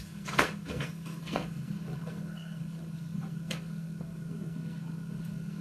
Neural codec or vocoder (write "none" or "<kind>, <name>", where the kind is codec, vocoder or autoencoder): codec, SNAC